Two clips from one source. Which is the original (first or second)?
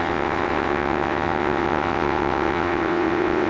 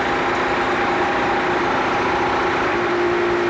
second